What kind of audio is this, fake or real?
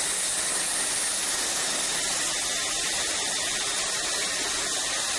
real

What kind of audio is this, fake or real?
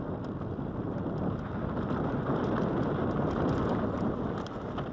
real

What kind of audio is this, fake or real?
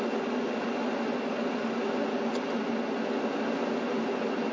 real